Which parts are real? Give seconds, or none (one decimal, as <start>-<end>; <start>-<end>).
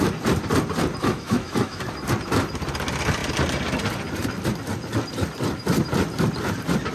0.0-1.0; 1.8-6.9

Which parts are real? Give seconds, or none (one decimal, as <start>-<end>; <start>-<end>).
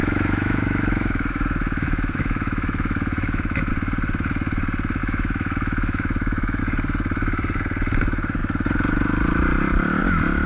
3.7-5.0; 6.6-10.5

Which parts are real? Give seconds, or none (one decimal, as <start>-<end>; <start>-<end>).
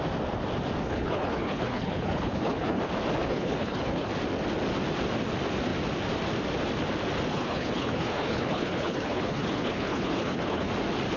0.0-0.8; 2.8-3.2; 4.1-7.3; 10.7-11.2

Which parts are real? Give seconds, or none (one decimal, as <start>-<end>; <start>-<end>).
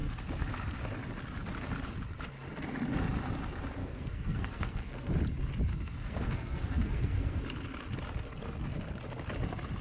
0.0-3.8; 5.1-5.7; 7.4-9.8